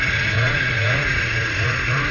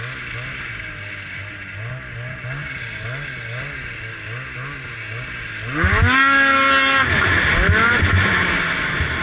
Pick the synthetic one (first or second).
first